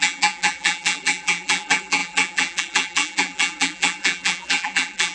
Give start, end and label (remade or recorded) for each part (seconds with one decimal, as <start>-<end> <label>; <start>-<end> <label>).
0.0-5.1 remade